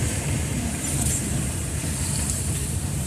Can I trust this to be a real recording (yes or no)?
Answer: no